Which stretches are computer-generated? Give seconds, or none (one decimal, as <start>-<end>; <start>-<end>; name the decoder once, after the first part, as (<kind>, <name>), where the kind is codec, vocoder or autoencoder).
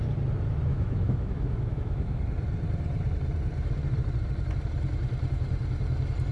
0.7-2.2 (autoencoder, DAC-VAE)